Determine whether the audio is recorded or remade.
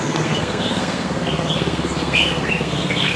remade